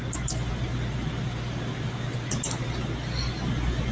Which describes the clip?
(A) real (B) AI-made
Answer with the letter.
A